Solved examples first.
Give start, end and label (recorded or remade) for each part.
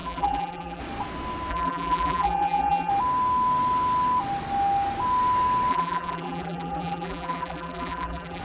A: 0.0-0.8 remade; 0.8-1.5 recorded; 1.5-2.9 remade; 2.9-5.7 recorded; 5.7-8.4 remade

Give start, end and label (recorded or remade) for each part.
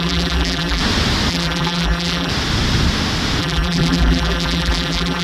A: 0.0-0.8 remade; 0.8-1.3 recorded; 1.3-2.3 remade; 2.3-3.4 recorded; 3.4-5.2 remade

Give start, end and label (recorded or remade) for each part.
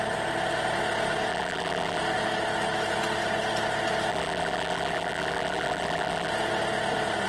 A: 0.0-1.3 recorded; 1.3-2.0 remade; 2.0-4.1 recorded; 4.1-6.3 remade; 6.3-7.3 recorded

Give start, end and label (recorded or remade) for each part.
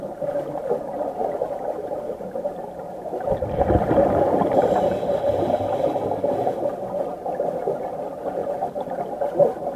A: 0.0-1.2 recorded; 1.2-2.3 remade; 2.3-9.8 recorded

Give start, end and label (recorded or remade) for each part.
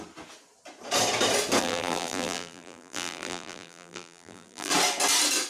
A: 0.0-1.6 recorded; 1.6-4.7 remade; 4.7-5.5 recorded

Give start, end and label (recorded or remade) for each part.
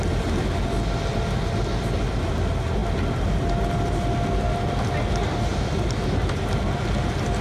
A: 0.0-5.5 recorded; 5.5-6.1 remade; 6.1-7.4 recorded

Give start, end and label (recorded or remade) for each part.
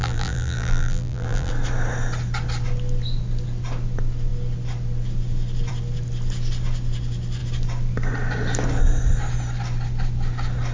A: 0.0-1.5 remade; 1.5-10.7 recorded